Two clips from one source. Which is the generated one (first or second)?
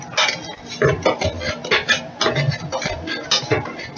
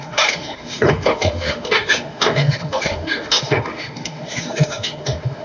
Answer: second